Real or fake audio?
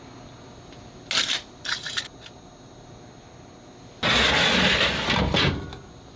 real